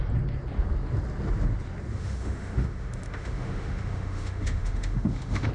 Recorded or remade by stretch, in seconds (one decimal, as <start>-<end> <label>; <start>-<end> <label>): 0.0-1.9 recorded; 1.9-5.5 remade

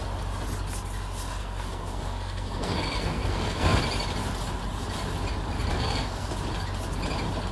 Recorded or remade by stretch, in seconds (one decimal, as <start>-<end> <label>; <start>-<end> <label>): 0.0-1.4 recorded; 1.4-3.8 remade; 3.8-5.7 recorded; 5.7-6.3 remade; 6.3-7.5 recorded

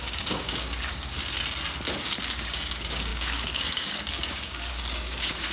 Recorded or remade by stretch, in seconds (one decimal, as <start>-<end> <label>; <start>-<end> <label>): 0.0-1.2 remade; 1.2-2.0 recorded; 2.0-5.5 remade

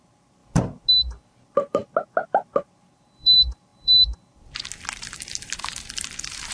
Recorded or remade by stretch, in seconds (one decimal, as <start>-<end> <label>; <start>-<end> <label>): 0.0-0.4 remade; 0.4-0.9 recorded; 0.9-1.8 remade; 1.8-2.5 recorded; 2.5-6.5 remade

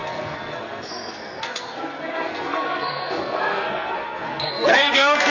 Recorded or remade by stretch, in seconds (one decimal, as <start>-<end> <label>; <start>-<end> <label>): 0.0-5.3 remade

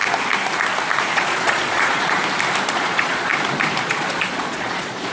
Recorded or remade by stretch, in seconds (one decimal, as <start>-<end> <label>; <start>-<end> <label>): 0.0-1.1 recorded; 1.1-2.2 remade; 2.2-2.7 recorded; 2.7-3.3 remade; 3.3-3.8 recorded; 3.8-5.1 remade

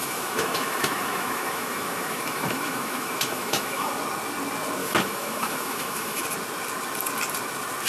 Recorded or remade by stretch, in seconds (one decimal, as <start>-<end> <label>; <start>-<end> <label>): 0.0-3.9 remade; 3.9-4.8 recorded; 4.8-6.2 remade; 6.2-7.9 recorded